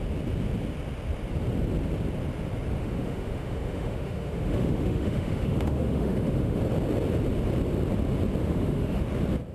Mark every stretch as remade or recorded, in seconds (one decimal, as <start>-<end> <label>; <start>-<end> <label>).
0.0-2.8 recorded; 2.8-6.6 remade; 6.6-8.4 recorded; 8.4-9.0 remade; 9.0-9.5 recorded